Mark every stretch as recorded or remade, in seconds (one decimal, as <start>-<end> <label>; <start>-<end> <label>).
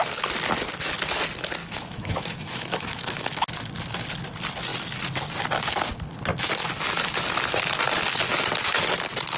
0.0-1.6 recorded; 1.6-3.5 remade; 3.5-9.4 recorded